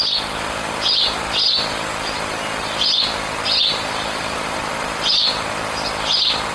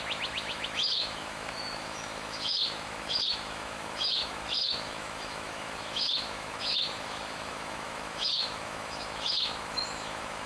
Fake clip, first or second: second